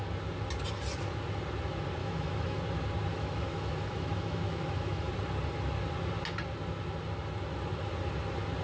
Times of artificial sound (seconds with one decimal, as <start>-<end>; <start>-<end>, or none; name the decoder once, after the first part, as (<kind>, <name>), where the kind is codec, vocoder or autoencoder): 2.0-2.6 (autoencoder, DAC-VAE); 3.1-5.1